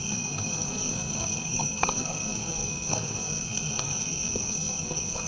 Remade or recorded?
remade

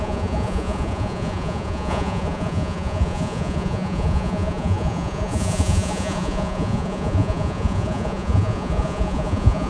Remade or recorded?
remade